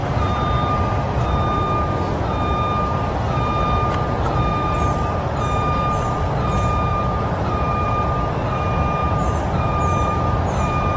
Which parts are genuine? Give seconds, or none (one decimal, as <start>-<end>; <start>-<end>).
0.0-4.5; 5.4-6.9; 7.9-9.0; 10.3-11.0

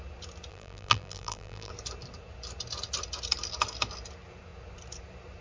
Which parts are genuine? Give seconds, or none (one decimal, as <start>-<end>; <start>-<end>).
0.0-0.5; 1.7-5.4